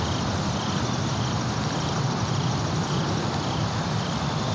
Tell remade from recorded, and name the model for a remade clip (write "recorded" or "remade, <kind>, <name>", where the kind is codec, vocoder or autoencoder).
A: recorded